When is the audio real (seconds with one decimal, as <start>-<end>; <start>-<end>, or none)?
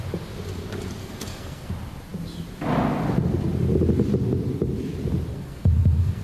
0.0-1.0; 1.7-5.3